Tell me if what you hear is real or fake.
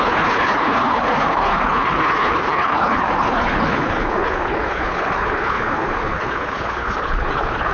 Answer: fake